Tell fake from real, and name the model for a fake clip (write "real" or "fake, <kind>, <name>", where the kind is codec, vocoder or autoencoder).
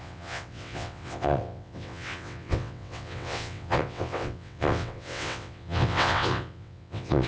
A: fake, vocoder, WaveNeXt